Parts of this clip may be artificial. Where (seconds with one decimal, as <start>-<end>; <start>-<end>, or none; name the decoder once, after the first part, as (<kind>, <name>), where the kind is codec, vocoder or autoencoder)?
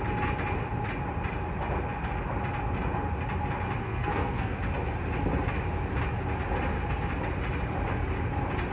3.8-4.6 (codec, SNAC)